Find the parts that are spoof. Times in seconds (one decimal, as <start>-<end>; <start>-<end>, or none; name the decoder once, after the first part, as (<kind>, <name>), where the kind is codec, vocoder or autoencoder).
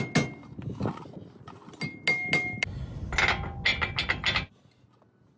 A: none